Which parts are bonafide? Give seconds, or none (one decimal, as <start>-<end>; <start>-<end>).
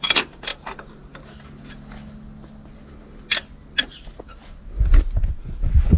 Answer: 0.0-6.0